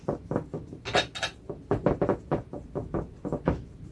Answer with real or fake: real